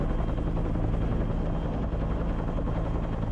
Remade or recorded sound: recorded